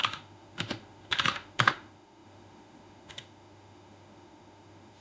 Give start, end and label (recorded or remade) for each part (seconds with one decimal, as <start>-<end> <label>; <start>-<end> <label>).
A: 0.0-5.0 remade